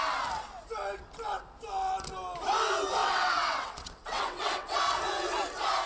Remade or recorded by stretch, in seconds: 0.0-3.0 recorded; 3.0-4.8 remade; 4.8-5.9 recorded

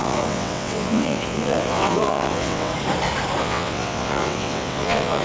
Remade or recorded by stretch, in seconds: 0.0-2.7 remade; 2.7-3.4 recorded; 3.4-5.2 remade

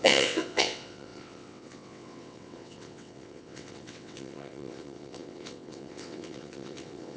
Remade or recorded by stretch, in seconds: 0.0-7.2 remade

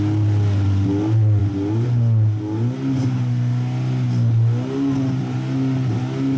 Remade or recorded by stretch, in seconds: 0.0-6.4 recorded

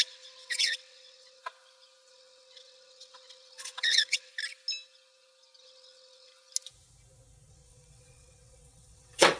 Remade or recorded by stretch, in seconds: 0.0-1.4 remade; 1.4-2.1 recorded; 2.1-4.3 remade; 4.3-5.6 recorded; 5.6-6.3 remade; 6.3-7.5 recorded; 7.5-9.4 remade